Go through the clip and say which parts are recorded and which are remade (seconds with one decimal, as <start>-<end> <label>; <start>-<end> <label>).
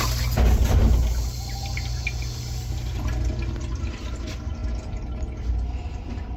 0.0-6.4 recorded